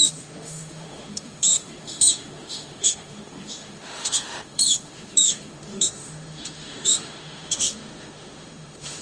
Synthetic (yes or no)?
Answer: yes